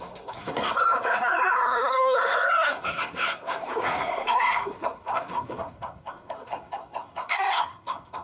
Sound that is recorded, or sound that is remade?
remade